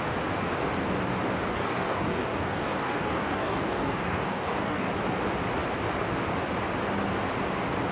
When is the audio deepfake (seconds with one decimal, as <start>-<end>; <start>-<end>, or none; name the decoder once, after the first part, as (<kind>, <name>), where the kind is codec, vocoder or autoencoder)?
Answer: 1.5-4.9 (codec, DAC)